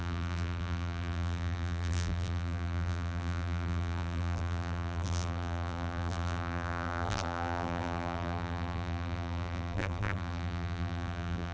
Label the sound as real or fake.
fake